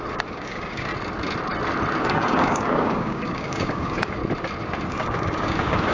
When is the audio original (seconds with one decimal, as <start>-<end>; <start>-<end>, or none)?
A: 0.9-2.0; 4.2-4.8